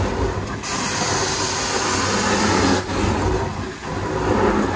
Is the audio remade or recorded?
recorded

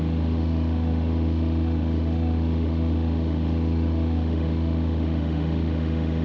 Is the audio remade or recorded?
remade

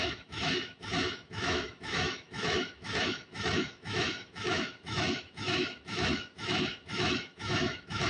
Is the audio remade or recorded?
remade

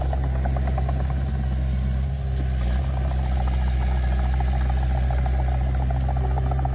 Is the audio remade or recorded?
recorded